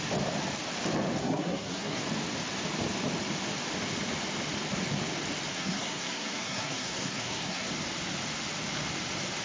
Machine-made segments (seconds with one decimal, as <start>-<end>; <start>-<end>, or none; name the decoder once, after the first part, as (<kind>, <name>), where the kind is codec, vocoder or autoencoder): 1.2-2.0 (codec, SNAC); 5.5-7.7